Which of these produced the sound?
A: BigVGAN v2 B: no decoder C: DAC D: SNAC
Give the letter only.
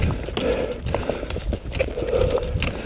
B